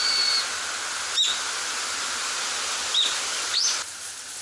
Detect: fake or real real